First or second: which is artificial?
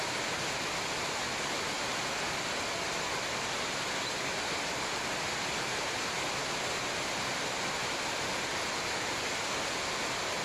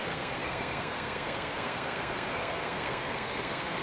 second